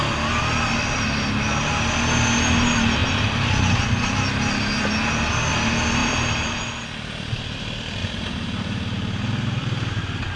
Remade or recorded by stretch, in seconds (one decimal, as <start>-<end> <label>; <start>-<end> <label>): 0.0-6.0 recorded; 6.0-6.6 remade; 6.6-8.0 recorded; 8.0-10.0 remade; 10.0-10.4 recorded